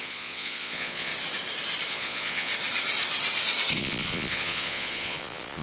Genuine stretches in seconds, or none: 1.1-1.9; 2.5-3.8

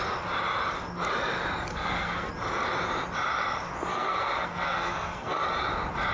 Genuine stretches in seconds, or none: 0.0-1.7; 2.3-3.9; 5.4-6.1

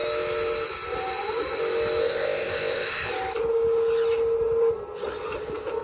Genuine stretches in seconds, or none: 0.0-2.0; 3.1-5.8

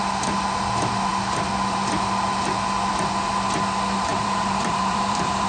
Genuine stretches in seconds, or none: 0.0-4.1

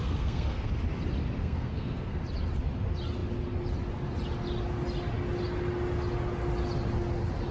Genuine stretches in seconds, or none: 0.7-1.4; 2.2-7.5

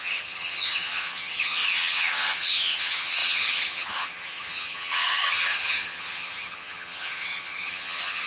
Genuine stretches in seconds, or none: none

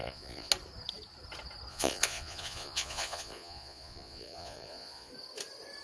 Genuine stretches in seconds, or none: 0.5-1.7; 5.1-5.8

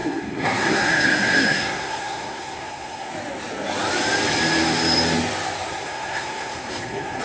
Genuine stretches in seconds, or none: 3.1-5.7